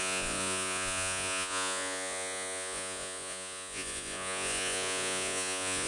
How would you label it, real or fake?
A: fake